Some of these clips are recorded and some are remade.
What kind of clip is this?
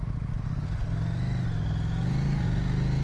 recorded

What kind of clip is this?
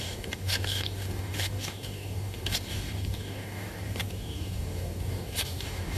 remade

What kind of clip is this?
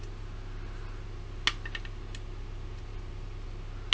recorded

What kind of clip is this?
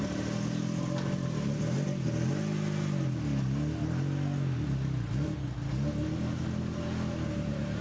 recorded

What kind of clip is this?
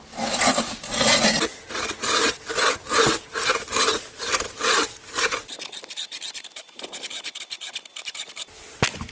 recorded